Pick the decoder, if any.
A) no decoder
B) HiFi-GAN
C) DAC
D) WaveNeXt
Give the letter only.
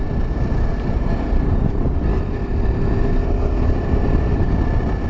A